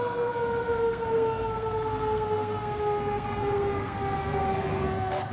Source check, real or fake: fake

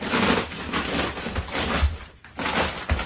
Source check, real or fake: real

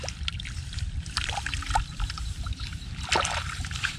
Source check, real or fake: real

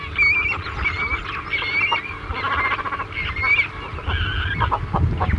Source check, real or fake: real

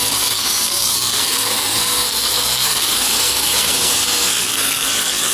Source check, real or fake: fake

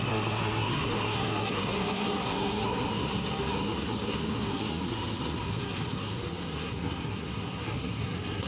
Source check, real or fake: fake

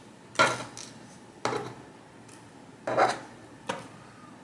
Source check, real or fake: real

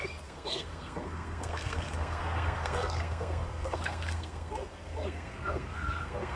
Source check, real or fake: fake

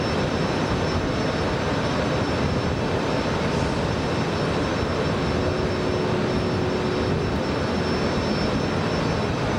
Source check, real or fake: real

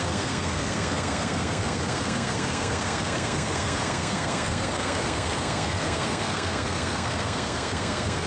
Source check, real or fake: fake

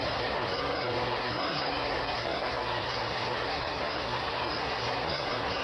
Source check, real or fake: fake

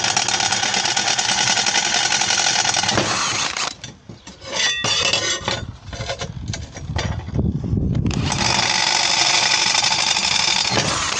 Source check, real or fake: real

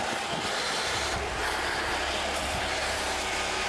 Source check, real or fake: real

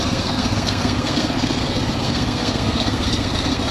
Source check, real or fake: fake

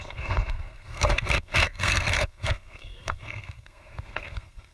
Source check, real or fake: fake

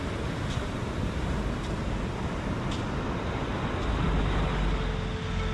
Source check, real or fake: real